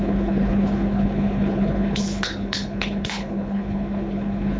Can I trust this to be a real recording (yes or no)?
no